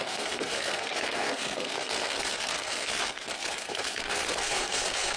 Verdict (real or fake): fake